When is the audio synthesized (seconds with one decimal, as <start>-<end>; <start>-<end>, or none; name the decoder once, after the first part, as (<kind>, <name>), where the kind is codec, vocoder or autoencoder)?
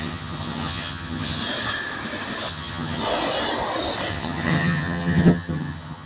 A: 0.0-1.4 (vocoder, HiFi-GAN); 2.5-3.0; 4.1-6.1